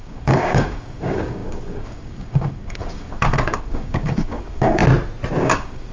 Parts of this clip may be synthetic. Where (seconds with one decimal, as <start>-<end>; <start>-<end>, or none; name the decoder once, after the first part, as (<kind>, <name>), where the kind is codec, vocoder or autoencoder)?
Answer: 0.0-4.8 (codec, DAC); 5.4-5.9